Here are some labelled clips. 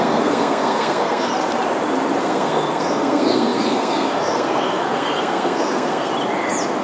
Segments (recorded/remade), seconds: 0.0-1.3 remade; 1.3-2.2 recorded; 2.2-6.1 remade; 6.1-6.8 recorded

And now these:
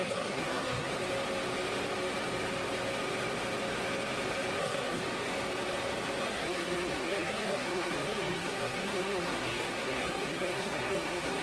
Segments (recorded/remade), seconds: 0.0-0.9 remade; 0.9-4.6 recorded; 4.6-5.0 remade; 5.0-6.2 recorded; 6.2-11.4 remade

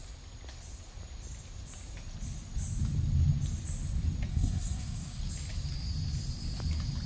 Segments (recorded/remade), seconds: 0.0-4.3 recorded; 4.3-5.2 remade; 5.2-7.1 recorded

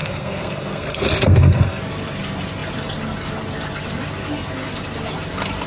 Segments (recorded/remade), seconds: 0.0-1.8 remade; 1.8-5.7 recorded

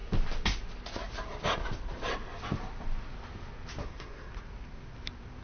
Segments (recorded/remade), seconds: 0.0-3.8 recorded; 3.8-4.3 remade; 4.3-5.4 recorded

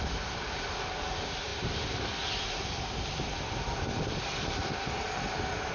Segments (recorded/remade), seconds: 0.0-5.7 recorded